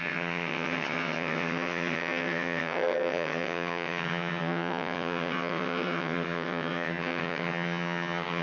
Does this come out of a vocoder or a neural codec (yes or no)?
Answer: yes